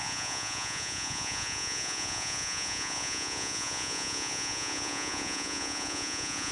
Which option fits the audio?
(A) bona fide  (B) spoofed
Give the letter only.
B